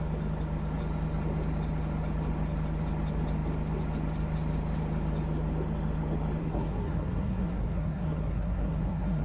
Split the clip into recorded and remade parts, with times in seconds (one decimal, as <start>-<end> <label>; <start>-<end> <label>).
0.0-6.4 recorded; 6.4-9.2 remade